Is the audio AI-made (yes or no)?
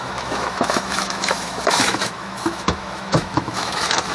yes